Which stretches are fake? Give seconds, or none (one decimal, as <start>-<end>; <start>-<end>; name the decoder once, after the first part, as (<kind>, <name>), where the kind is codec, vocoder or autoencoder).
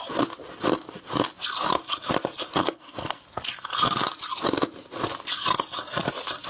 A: 2.6-3.2 (codec, SNAC)